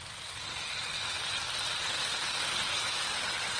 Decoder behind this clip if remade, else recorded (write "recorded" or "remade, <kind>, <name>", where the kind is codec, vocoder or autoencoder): recorded